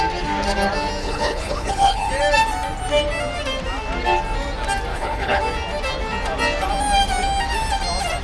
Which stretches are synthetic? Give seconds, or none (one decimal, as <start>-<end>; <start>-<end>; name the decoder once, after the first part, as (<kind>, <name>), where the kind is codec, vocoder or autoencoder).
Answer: 1.0-2.1 (codec, HILCodec); 4.9-5.4